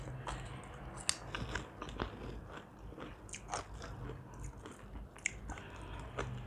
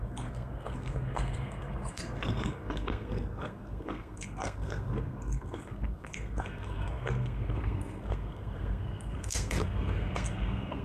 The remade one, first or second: second